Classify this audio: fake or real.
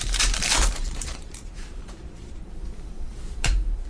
fake